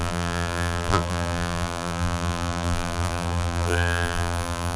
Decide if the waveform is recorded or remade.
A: remade